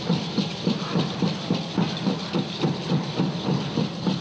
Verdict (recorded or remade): remade